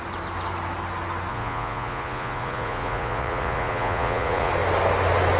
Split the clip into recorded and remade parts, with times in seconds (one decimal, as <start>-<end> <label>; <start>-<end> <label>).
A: 0.0-1.3 recorded; 1.3-4.5 remade; 4.5-5.4 recorded